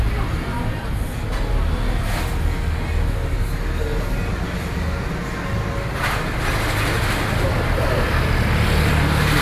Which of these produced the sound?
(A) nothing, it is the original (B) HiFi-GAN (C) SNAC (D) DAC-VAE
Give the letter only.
A